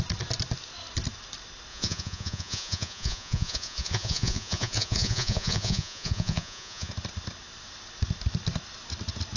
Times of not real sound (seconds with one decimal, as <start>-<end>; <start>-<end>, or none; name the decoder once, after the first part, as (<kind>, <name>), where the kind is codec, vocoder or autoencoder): 1.7-6.9 (vocoder, Vocos)